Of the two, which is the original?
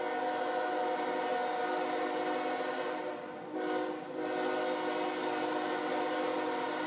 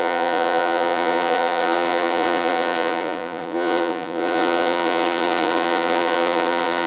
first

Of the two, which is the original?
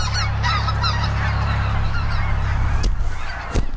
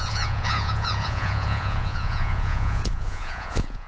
first